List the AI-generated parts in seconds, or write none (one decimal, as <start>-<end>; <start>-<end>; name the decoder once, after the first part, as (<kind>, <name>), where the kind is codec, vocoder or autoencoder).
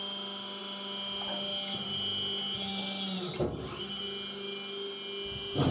none